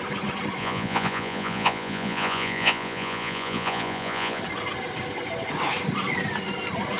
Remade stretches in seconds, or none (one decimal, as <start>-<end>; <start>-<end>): 0.6-4.4